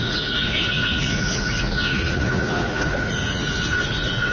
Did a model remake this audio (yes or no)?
yes